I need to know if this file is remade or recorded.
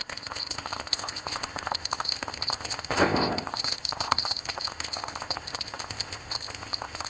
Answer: remade